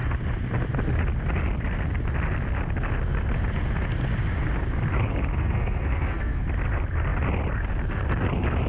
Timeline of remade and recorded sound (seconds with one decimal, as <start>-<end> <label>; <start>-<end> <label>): 0.0-5.4 recorded; 5.4-6.4 remade; 6.4-8.7 recorded